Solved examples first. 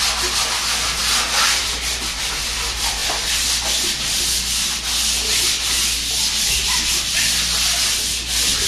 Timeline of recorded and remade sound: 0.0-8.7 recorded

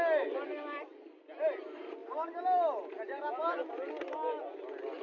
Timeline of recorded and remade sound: 0.0-5.0 recorded

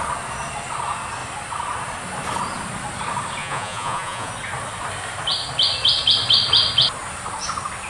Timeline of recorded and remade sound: 0.0-3.4 recorded; 3.4-4.3 remade; 4.3-7.9 recorded

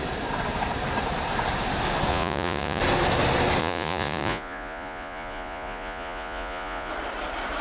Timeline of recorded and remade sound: 0.0-2.1 recorded; 2.1-2.8 remade; 2.8-3.6 recorded; 3.6-6.9 remade; 6.9-7.6 recorded